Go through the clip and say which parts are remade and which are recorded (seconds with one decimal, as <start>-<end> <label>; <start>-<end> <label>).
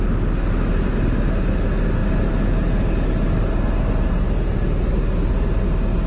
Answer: 0.0-6.1 recorded